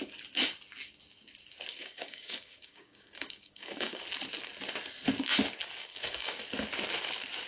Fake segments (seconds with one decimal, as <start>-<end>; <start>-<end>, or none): 1.7-4.0; 5.8-6.4